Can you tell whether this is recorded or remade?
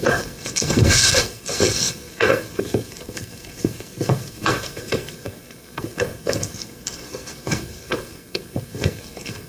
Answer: remade